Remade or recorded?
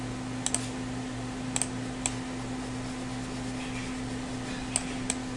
recorded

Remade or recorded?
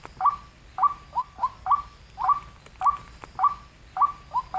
recorded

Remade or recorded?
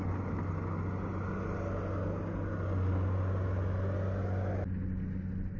recorded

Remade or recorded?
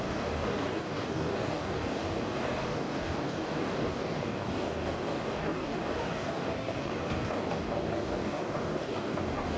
remade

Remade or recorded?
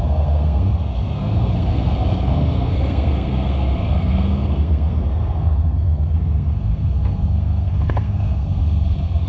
remade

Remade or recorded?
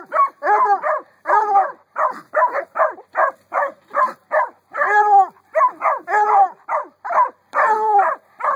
recorded